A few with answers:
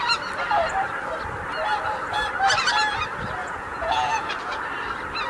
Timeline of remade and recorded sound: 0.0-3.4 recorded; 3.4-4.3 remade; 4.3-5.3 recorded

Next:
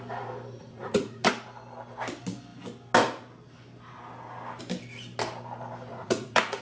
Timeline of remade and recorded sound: 0.0-0.6 recorded; 0.6-1.3 remade; 1.3-5.9 recorded; 5.9-6.6 remade

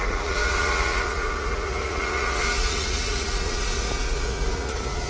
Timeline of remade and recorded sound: 0.0-5.1 remade